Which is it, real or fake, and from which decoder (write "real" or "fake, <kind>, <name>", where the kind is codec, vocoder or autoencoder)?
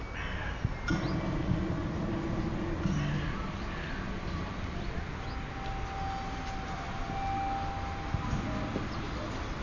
real